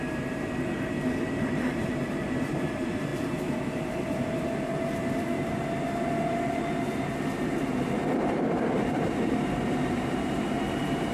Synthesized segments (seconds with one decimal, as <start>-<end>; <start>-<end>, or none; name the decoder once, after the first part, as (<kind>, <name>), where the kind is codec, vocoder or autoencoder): 0.0-8.0 (vocoder, BigVGAN v2); 8.7-11.1